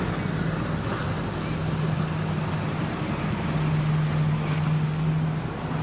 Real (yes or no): yes